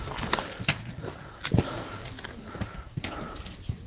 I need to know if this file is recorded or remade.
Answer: recorded